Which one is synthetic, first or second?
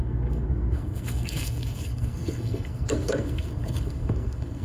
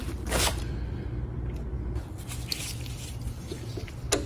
first